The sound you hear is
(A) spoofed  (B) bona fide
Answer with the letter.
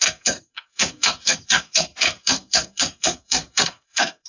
A